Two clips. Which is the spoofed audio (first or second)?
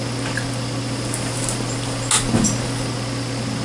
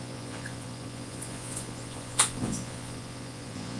second